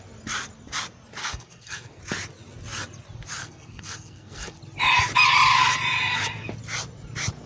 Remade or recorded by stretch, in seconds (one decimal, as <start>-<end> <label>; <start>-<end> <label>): 0.0-1.2 recorded; 1.2-2.0 remade; 2.0-3.4 recorded; 3.4-4.6 remade; 4.6-7.5 recorded